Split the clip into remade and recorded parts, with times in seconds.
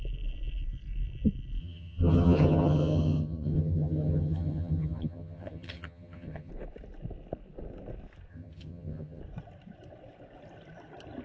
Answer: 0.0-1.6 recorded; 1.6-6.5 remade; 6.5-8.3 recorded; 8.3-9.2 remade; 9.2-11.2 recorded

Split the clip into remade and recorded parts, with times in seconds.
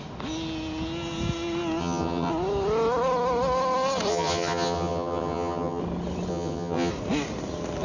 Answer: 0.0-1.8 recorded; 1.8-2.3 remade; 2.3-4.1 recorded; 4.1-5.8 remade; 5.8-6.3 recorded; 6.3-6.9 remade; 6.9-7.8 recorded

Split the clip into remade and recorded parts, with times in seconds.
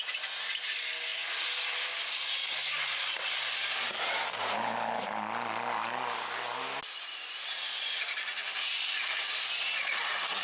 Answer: 0.0-10.4 recorded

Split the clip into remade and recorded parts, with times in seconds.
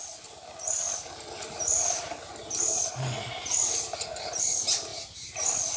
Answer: 0.0-5.8 recorded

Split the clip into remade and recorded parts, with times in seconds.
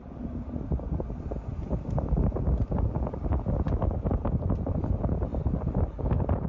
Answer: 0.0-6.5 recorded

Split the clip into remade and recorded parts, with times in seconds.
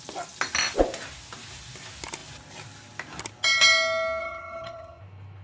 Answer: 0.0-4.2 recorded; 4.2-5.0 remade; 5.0-5.4 recorded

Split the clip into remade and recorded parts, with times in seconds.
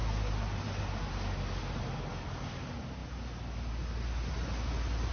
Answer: 0.0-5.1 recorded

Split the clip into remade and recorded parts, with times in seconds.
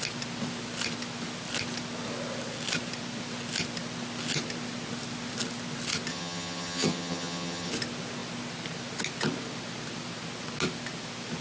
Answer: 0.0-6.1 recorded; 6.1-7.7 remade; 7.7-11.4 recorded